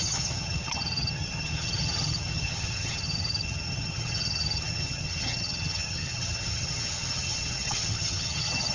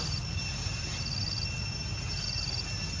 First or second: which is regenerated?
first